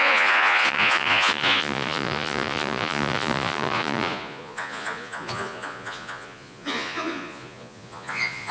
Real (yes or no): no